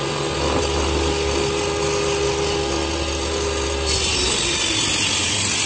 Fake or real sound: real